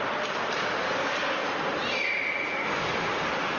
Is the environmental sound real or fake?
real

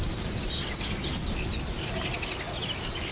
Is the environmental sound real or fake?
real